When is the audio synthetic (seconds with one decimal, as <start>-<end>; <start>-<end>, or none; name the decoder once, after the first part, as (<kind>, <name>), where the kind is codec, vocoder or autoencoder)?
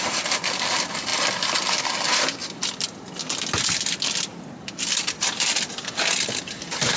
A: none